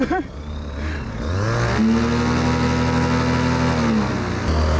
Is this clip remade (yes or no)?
no